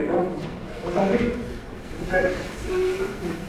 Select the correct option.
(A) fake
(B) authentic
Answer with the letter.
A